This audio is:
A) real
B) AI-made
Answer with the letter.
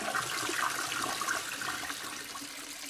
A